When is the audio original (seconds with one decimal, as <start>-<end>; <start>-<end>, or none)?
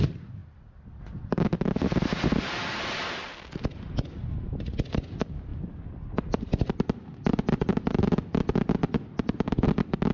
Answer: 0.0-5.5; 6.7-10.1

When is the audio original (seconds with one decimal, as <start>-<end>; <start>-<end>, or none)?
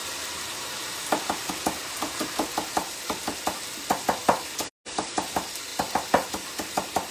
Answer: 0.0-5.7; 6.5-7.1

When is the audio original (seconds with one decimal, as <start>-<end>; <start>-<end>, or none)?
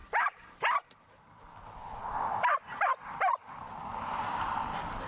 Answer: 0.0-5.1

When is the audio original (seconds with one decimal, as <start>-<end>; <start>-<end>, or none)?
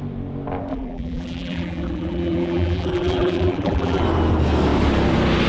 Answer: 0.0-0.7; 4.0-5.5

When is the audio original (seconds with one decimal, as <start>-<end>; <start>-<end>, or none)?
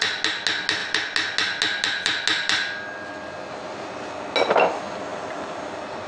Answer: 0.0-5.1